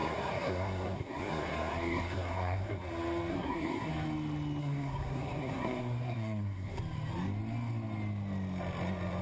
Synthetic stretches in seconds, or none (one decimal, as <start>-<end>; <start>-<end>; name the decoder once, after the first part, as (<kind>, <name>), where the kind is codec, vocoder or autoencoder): 0.0-2.8 (codec, SNAC); 3.3-3.9; 4.6-6.8